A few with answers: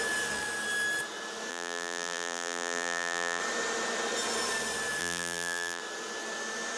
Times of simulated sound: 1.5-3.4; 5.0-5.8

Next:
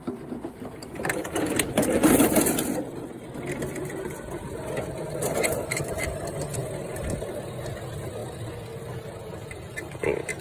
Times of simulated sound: none

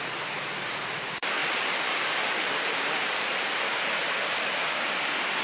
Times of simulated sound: 1.4-3.6; 4.0-4.9

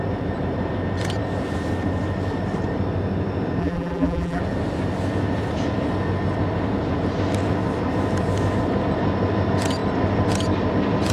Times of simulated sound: 3.6-4.4

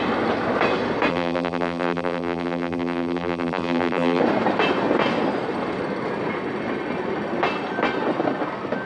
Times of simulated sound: 1.1-4.2

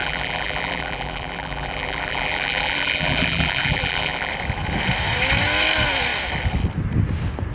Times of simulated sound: 0.0-4.3